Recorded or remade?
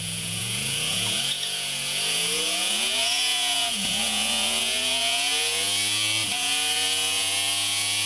remade